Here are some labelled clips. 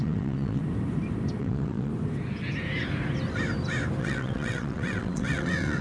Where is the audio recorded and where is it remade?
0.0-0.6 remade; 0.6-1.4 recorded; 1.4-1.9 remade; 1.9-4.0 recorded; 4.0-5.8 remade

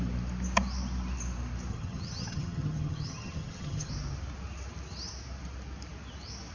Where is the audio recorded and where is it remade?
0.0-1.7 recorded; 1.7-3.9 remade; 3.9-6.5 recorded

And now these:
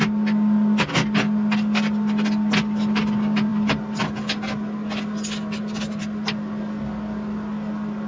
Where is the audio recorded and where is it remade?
0.0-8.1 recorded

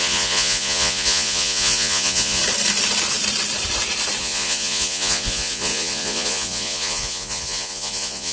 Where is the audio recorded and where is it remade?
0.0-2.4 remade; 2.4-4.2 recorded; 4.2-8.3 remade

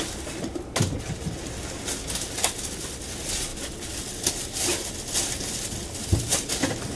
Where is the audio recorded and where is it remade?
0.0-7.0 recorded

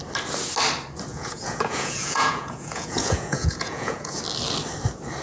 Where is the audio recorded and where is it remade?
0.0-1.1 recorded; 1.1-4.2 remade; 4.2-5.2 recorded

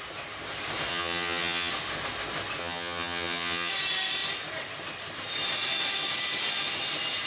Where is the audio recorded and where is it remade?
0.0-0.9 recorded; 0.9-1.7 remade; 1.7-2.6 recorded; 2.6-3.7 remade; 3.7-7.3 recorded

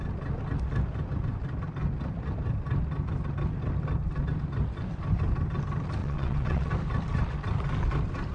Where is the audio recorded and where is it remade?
0.0-6.0 recorded; 6.0-6.7 remade; 6.7-8.3 recorded